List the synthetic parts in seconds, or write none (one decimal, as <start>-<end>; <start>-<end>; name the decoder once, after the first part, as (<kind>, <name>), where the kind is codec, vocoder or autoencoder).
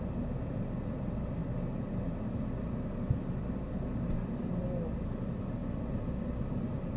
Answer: none